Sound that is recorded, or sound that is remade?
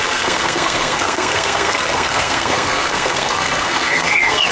remade